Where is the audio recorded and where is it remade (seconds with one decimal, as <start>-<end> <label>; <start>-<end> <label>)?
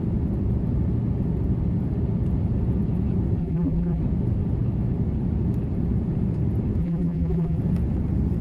0.0-3.4 recorded; 3.4-4.0 remade; 4.0-6.8 recorded; 6.8-7.6 remade; 7.6-8.4 recorded